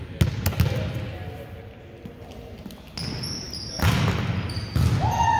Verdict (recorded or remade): recorded